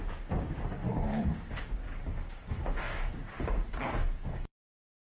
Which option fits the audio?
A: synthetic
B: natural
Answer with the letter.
A